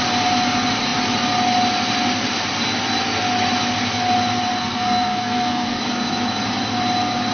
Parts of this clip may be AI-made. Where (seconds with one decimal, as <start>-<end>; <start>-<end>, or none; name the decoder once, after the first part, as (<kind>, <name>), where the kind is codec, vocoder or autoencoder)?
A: 4.6-5.8 (codec, SNAC)